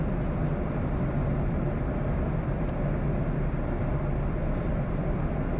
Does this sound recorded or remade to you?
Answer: remade